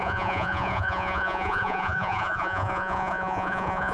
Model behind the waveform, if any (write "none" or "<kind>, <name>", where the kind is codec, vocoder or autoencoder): vocoder, Vocos